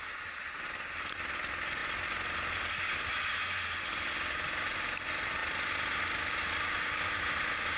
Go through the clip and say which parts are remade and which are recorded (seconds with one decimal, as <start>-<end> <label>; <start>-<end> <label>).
0.0-7.8 recorded

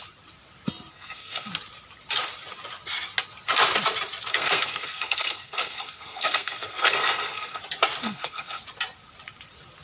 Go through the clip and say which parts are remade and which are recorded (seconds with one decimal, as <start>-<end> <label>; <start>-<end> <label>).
0.0-0.9 recorded; 0.9-1.5 remade; 1.5-4.3 recorded; 4.3-7.6 remade; 7.6-8.0 recorded; 8.0-8.6 remade; 8.6-9.8 recorded